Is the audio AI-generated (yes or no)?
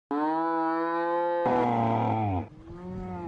no